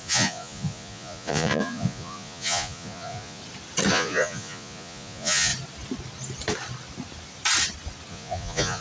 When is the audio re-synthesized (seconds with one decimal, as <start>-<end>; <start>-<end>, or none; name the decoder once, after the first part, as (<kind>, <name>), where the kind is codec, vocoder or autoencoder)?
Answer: 0.0-3.4 (vocoder, Vocos); 3.9-5.5; 8.1-8.8